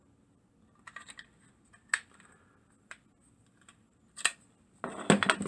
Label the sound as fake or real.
real